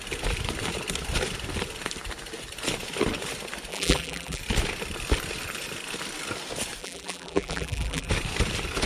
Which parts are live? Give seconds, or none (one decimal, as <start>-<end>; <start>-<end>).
0.0-3.7; 4.4-6.8; 8.1-8.9